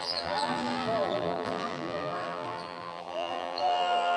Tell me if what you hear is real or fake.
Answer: fake